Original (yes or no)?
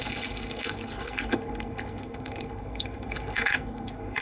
no